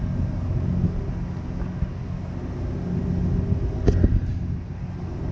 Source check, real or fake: real